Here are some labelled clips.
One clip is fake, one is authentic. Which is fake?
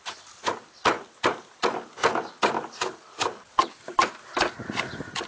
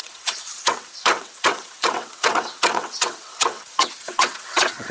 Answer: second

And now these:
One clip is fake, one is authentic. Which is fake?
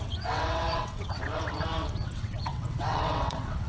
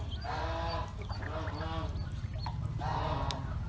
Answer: first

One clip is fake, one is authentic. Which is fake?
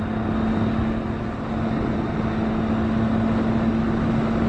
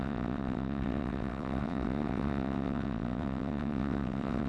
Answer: second